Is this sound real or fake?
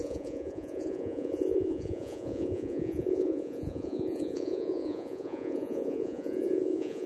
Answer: fake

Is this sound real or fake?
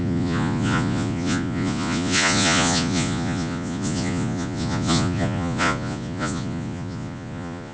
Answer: fake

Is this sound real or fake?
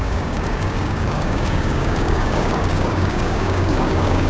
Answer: fake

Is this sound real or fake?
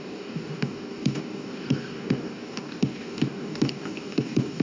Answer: fake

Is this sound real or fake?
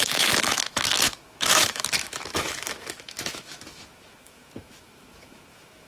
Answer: fake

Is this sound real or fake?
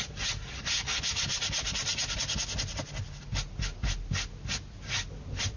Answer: real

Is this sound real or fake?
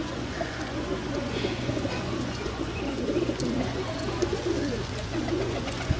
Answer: fake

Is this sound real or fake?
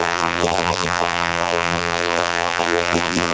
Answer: fake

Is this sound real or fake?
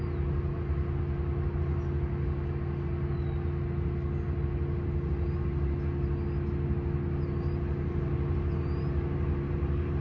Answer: real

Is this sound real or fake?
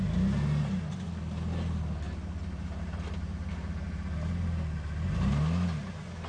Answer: real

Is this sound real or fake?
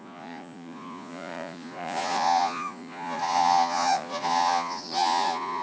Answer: fake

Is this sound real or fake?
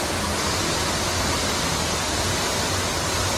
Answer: real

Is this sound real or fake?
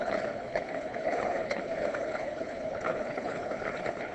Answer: fake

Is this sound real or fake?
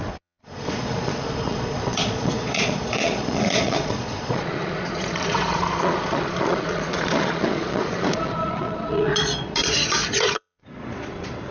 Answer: fake